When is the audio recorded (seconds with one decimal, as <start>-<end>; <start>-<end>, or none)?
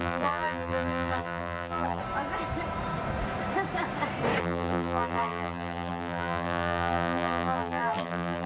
2.0-4.4